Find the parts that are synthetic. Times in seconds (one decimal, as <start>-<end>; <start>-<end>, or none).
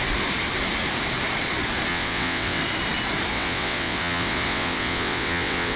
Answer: 1.9-2.6; 3.3-5.8